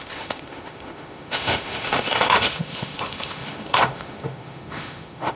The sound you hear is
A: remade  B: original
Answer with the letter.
A